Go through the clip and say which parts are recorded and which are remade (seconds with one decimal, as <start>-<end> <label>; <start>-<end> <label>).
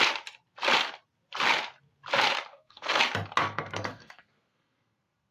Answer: 0.0-2.5 recorded; 2.5-3.0 remade; 3.0-3.4 recorded; 3.4-5.3 remade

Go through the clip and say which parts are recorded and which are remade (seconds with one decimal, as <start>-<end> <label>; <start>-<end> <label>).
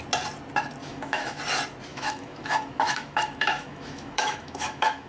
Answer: 0.0-0.8 recorded; 0.8-1.4 remade; 1.4-1.9 recorded; 1.9-5.1 remade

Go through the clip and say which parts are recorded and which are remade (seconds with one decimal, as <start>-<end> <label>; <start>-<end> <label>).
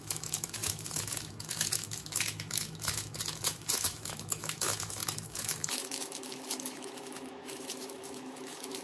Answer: 0.0-8.8 remade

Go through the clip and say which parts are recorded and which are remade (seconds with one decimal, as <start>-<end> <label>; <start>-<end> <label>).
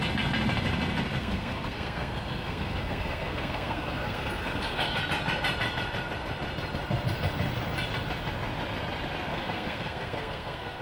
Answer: 0.0-1.2 recorded; 1.2-5.0 remade; 5.0-9.3 recorded; 9.3-10.8 remade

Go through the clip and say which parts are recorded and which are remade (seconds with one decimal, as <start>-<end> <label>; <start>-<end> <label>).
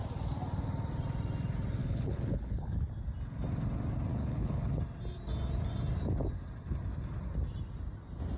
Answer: 0.0-1.8 recorded; 1.8-2.9 remade; 2.9-4.1 recorded; 4.1-4.8 remade; 4.8-8.4 recorded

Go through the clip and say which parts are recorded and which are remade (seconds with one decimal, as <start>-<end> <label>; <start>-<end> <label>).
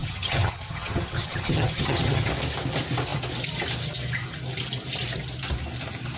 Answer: 0.0-2.3 remade; 2.3-6.2 recorded